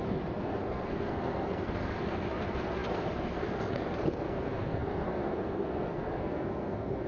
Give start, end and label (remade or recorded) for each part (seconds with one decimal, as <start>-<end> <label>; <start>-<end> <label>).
0.0-7.1 remade